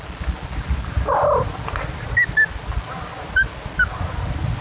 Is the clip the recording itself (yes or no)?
yes